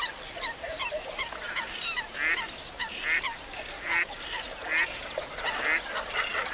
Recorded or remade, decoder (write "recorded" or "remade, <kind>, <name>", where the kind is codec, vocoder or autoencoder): recorded